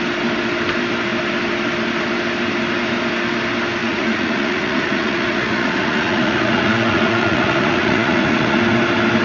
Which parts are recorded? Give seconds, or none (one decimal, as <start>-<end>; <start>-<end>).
0.0-3.8; 8.6-9.2